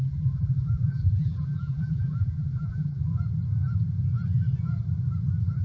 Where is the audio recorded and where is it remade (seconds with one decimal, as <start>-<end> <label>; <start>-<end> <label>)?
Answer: 0.0-3.1 remade; 3.1-5.6 recorded